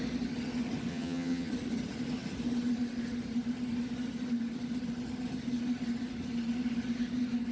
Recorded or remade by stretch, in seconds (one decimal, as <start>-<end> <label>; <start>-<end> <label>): 0.0-0.9 recorded; 0.9-1.5 remade; 1.5-7.5 recorded

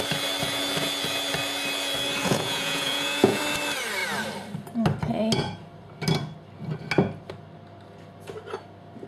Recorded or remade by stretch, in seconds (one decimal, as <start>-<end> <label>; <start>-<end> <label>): 0.0-2.2 recorded; 2.2-3.4 remade; 3.4-9.1 recorded

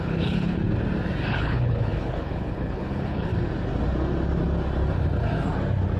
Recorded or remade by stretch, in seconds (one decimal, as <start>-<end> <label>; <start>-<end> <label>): 0.0-0.6 remade; 0.6-1.3 recorded; 1.3-3.3 remade; 3.3-6.0 recorded

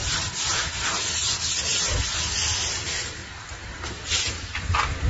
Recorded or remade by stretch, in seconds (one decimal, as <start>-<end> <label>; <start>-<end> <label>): 0.0-2.7 recorded; 2.7-3.2 remade; 3.2-4.2 recorded; 4.2-5.1 remade

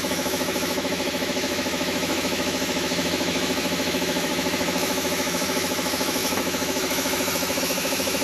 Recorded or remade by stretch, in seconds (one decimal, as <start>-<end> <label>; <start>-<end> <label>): 0.0-8.2 remade